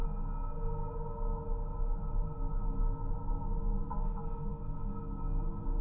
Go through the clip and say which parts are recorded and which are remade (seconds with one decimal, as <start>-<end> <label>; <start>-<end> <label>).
0.0-5.8 recorded

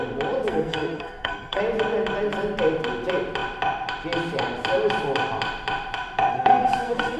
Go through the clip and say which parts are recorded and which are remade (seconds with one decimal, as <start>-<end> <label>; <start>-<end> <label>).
0.0-0.5 recorded; 0.5-1.6 remade; 1.6-6.3 recorded; 6.3-7.2 remade

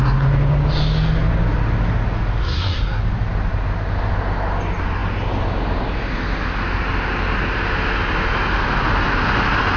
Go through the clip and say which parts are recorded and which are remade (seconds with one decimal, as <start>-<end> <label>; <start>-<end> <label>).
0.0-2.4 recorded; 2.4-3.0 remade; 3.0-9.8 recorded